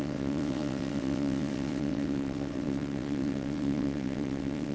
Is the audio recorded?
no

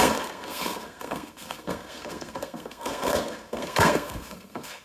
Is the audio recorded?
no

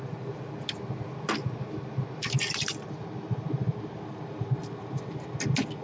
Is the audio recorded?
yes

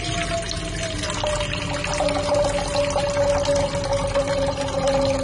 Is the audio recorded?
yes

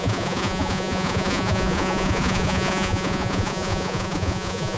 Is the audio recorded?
no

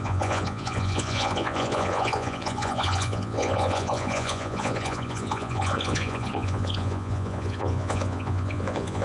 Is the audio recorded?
no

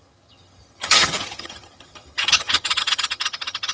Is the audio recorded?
no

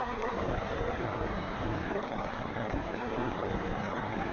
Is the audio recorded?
no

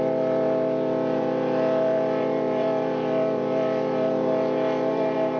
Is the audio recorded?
no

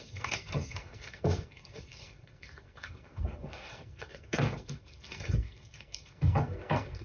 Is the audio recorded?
no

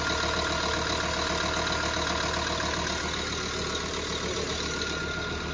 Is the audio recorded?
yes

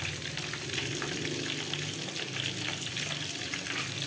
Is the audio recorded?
yes